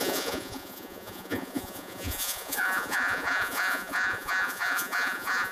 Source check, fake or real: fake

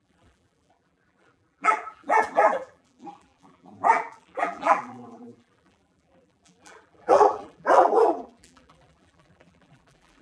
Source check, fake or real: fake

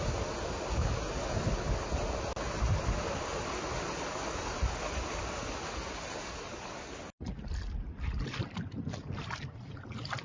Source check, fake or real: real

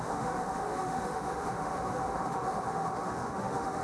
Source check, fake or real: fake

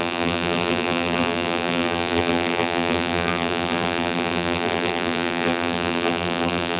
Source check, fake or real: fake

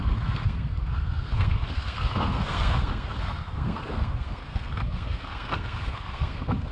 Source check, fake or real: fake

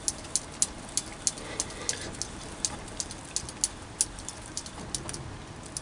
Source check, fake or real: real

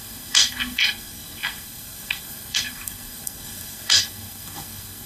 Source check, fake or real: fake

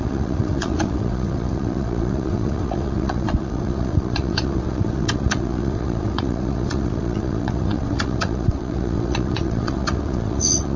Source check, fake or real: fake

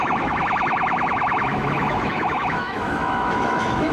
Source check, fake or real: fake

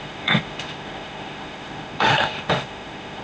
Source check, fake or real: fake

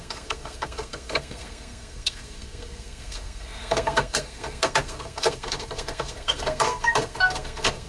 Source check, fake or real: fake